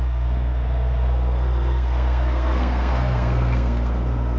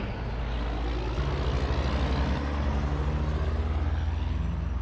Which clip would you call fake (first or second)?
first